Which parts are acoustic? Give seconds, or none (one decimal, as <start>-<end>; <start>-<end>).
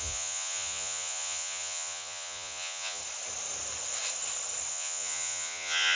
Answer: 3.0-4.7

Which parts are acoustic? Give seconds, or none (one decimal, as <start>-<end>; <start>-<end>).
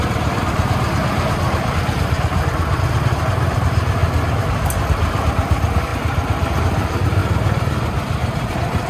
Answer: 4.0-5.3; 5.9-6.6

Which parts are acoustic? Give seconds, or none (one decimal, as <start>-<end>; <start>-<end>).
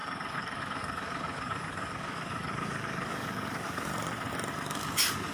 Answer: 3.9-4.5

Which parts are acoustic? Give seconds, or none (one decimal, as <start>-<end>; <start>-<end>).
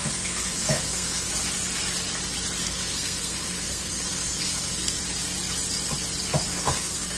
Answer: 1.3-2.6; 5.0-6.5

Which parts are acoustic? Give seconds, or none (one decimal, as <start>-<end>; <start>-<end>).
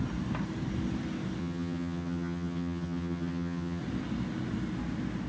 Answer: 0.0-1.4; 3.8-5.3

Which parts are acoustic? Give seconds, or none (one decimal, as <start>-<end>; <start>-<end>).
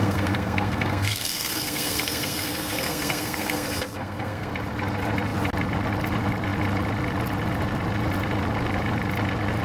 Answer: 4.5-9.6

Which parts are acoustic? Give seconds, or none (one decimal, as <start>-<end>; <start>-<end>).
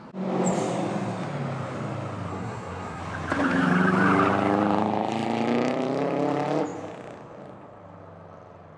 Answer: 0.0-2.3; 3.0-8.8